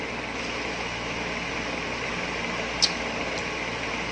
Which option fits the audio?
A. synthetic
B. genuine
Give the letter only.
B